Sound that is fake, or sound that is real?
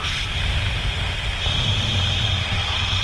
real